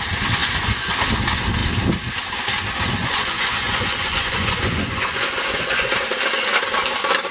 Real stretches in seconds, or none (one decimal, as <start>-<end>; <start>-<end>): 0.0-0.4; 0.9-3.0; 5.9-7.3